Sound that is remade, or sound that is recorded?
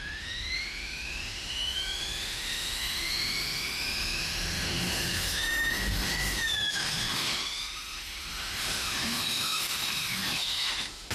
remade